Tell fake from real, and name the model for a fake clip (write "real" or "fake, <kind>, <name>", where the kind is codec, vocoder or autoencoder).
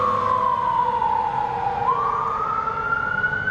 real